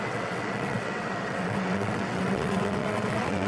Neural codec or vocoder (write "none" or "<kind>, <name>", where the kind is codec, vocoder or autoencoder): vocoder, WaveNeXt